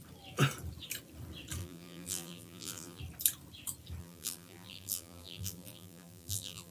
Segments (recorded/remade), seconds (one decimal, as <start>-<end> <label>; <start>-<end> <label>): 0.0-1.6 recorded; 1.6-3.0 remade; 3.0-4.0 recorded; 4.0-6.7 remade